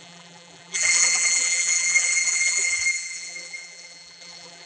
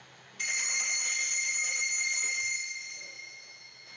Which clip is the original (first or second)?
second